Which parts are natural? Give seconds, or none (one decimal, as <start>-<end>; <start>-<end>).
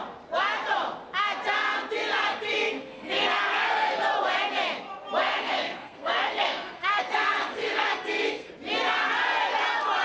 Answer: 0.0-2.3; 4.1-5.2; 8.5-10.0